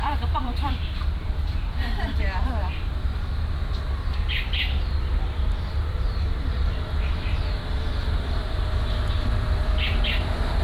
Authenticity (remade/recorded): remade